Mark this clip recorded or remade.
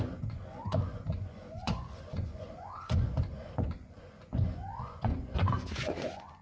remade